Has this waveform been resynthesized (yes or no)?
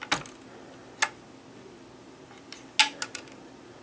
no